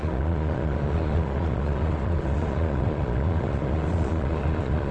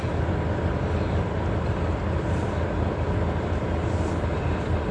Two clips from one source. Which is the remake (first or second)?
first